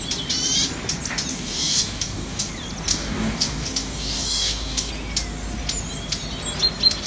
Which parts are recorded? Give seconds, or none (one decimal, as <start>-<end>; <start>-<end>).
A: 0.0-1.3; 2.5-2.9; 4.9-7.1